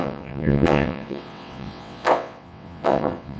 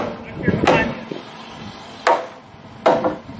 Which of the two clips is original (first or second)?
second